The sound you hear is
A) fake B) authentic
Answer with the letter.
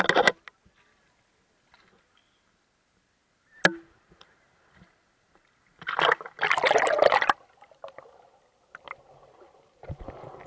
B